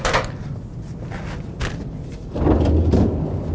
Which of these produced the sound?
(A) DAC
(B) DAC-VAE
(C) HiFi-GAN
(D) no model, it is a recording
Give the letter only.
D